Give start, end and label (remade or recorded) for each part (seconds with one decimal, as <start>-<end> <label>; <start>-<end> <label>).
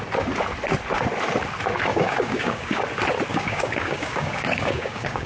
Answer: 0.0-1.9 recorded; 1.9-2.8 remade; 2.8-3.3 recorded; 3.3-5.3 remade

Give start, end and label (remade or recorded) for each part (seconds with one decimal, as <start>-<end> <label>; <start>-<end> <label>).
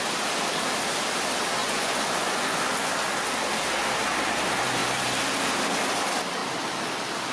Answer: 0.0-1.6 recorded; 1.6-2.9 remade; 2.9-7.3 recorded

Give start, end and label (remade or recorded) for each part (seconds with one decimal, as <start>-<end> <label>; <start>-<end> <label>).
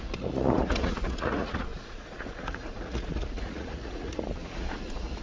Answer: 0.0-5.2 remade